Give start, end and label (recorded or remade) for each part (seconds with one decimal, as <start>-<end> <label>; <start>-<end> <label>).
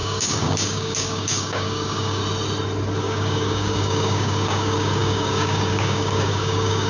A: 0.0-2.2 remade; 2.2-3.0 recorded; 3.0-6.9 remade